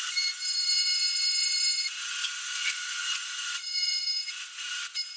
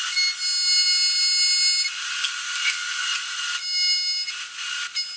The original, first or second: second